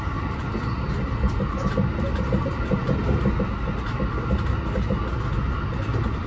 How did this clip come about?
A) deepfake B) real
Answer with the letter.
B